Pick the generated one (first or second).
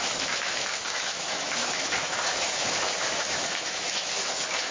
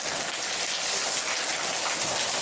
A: first